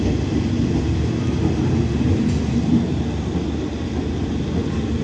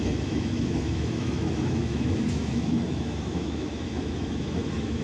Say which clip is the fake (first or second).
second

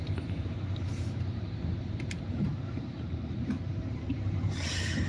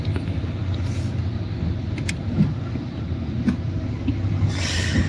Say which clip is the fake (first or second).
first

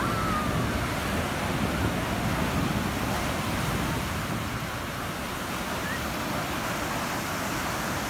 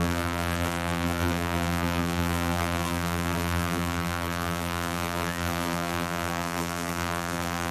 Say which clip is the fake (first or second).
second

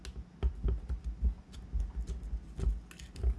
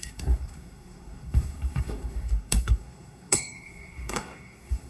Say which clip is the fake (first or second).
second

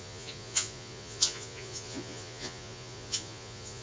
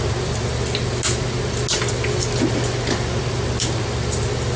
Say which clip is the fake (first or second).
first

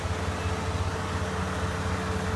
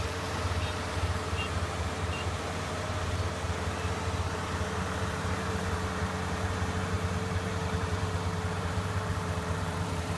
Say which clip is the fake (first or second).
second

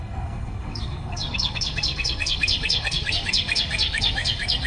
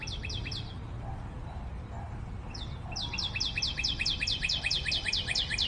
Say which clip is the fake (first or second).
first